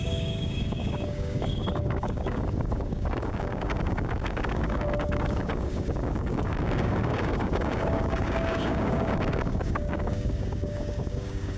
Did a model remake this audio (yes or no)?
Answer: yes